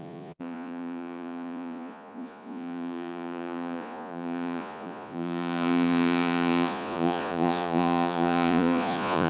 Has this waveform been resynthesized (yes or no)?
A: yes